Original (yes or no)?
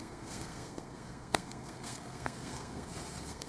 no